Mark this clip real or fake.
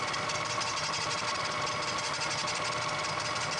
real